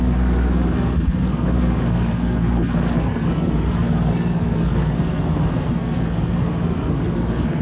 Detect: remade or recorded remade